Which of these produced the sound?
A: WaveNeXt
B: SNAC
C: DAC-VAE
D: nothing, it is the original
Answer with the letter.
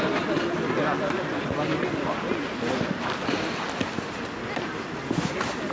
D